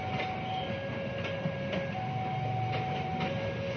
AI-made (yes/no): no